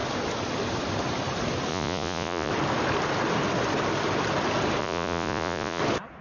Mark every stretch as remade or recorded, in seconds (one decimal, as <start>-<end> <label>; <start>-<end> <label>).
0.0-1.7 recorded; 1.7-2.5 remade; 2.5-4.8 recorded; 4.8-5.8 remade; 5.8-6.2 recorded